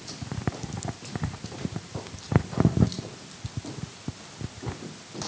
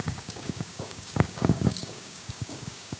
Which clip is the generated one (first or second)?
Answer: second